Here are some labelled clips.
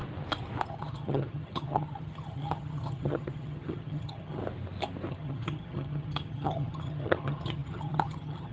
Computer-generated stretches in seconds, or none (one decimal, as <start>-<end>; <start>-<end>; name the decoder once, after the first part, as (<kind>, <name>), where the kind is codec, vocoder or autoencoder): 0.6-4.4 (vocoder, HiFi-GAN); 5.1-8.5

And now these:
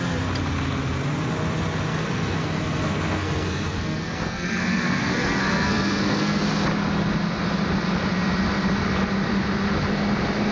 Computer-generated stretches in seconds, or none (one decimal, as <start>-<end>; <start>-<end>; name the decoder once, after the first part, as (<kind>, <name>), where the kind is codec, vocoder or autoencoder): 1.9-6.4 (codec, SNAC)

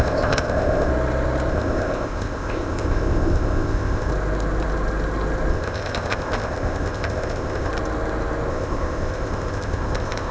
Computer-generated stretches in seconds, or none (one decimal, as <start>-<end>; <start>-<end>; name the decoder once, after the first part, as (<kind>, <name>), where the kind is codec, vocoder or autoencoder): 0.0-0.9 (codec, ZipCodec); 1.5-4.1; 5.5-7.7; 8.5-10.3

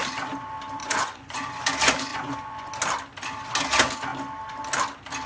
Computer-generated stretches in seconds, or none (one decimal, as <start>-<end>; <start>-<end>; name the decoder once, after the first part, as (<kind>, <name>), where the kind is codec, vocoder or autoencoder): 0.8-1.7 (vocoder, Vocos); 2.1-2.7